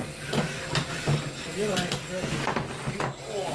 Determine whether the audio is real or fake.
real